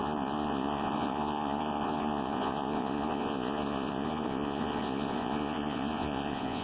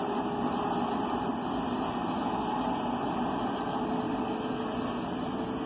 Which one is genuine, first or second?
second